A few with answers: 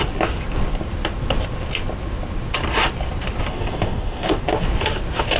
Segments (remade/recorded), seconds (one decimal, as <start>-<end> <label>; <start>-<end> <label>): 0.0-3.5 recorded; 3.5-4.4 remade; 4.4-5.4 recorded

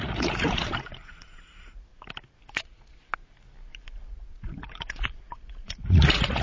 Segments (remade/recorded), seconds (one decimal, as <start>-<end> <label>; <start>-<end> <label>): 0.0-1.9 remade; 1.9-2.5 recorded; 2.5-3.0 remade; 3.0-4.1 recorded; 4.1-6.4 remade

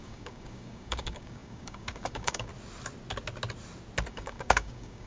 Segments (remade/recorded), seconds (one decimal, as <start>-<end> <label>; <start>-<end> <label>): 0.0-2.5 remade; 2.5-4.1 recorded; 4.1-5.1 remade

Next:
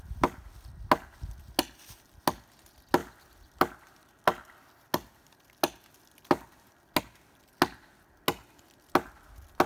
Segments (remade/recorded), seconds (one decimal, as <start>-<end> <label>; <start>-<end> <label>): 0.0-9.7 recorded

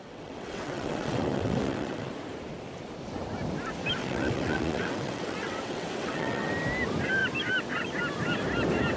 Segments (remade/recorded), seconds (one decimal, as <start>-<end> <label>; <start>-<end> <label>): 0.0-2.1 remade; 2.1-4.0 recorded; 4.0-6.5 remade; 6.5-9.0 recorded

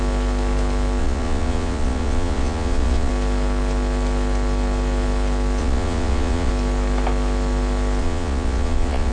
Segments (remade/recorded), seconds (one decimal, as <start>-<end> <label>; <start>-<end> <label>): 0.0-1.0 recorded; 1.0-3.1 remade; 3.1-5.6 recorded; 5.6-6.5 remade; 6.5-8.0 recorded; 8.0-9.1 remade